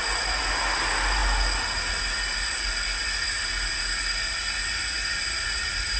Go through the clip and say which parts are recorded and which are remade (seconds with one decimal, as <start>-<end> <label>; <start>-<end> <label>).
0.0-6.0 recorded